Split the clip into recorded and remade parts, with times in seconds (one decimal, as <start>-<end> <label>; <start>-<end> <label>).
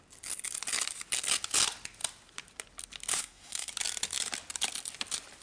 0.0-3.1 recorded; 3.1-3.7 remade; 3.7-5.4 recorded